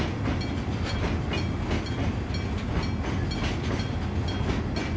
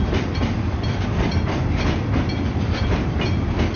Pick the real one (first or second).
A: first